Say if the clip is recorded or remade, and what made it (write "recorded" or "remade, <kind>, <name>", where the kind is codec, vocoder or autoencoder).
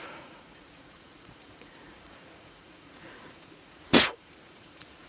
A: remade, vocoder, Vocos